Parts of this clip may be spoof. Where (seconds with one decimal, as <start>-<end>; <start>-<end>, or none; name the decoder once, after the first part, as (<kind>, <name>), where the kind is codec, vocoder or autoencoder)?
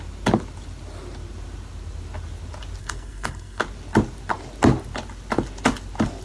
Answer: 2.8-3.6 (codec, SNAC)